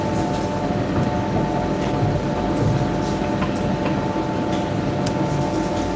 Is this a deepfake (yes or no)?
no